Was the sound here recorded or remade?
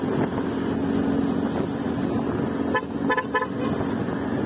recorded